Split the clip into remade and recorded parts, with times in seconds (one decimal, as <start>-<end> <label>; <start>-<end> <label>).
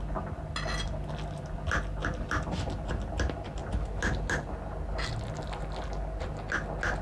0.0-7.0 recorded